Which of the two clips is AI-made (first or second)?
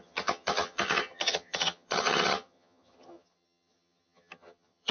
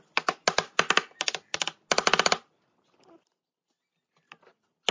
first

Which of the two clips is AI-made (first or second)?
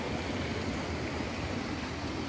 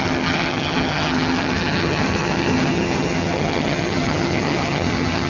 second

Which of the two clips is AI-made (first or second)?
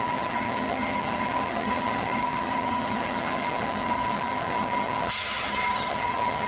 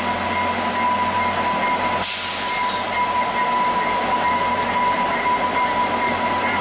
first